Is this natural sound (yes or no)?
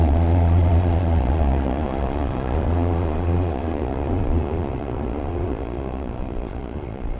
no